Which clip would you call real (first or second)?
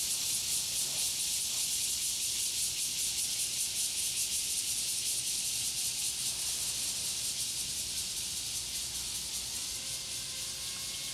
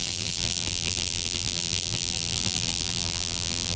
first